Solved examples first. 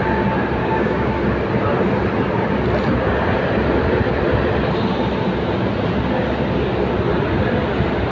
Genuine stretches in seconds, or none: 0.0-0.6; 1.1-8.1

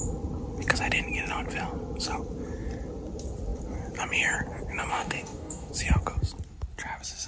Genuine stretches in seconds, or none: 0.0-4.9; 5.7-7.3

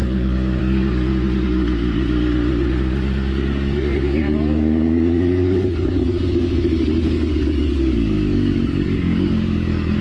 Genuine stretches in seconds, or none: 1.1-3.3

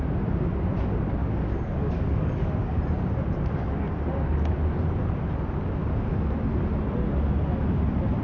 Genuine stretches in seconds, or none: 0.0-1.2; 2.8-8.2

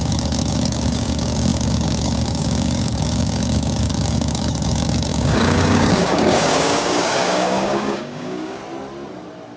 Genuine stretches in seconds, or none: 8.6-9.6